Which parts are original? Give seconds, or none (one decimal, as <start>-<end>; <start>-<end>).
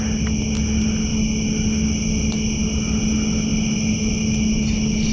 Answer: 0.0-5.1